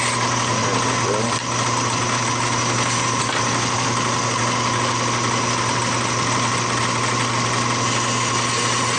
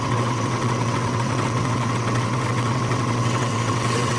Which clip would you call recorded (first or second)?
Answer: first